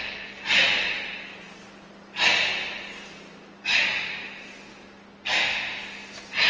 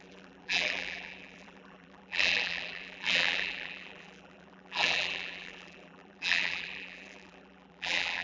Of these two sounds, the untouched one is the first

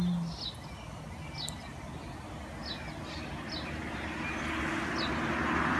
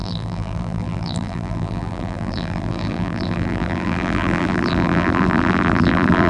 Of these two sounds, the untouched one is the first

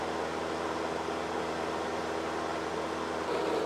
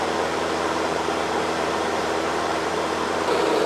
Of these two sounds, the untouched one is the first